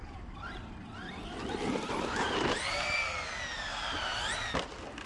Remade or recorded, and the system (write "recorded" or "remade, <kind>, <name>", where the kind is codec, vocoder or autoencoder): recorded